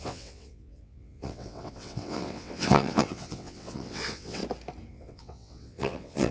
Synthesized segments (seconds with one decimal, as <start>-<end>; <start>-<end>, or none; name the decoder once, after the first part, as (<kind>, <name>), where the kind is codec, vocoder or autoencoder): 0.0-4.4 (vocoder, WaveNeXt); 4.9-6.3